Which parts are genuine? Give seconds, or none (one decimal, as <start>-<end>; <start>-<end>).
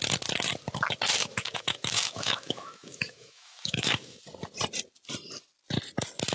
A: 0.0-1.2; 4.2-6.3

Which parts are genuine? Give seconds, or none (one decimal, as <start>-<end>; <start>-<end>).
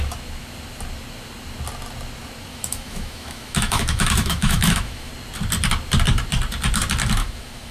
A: 0.0-2.5; 5.1-7.2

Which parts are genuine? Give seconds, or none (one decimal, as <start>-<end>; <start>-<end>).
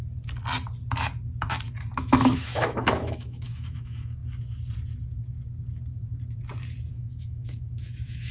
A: 0.0-2.0; 4.2-6.9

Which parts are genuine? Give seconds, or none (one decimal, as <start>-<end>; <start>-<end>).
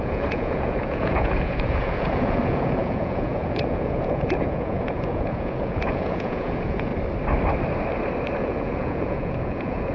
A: 6.9-8.4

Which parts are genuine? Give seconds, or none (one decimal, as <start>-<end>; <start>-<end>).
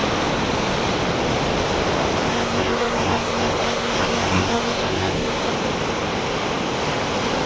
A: 0.0-2.3; 5.5-7.5